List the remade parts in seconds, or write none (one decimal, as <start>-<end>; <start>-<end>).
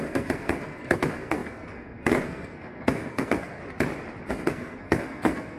0.0-3.6; 4.3-5.6